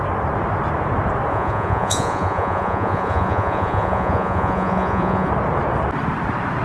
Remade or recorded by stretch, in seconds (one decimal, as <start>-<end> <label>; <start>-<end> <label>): 0.0-1.3 recorded; 1.3-5.3 remade; 5.3-6.6 recorded